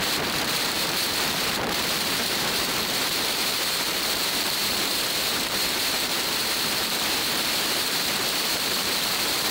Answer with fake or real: fake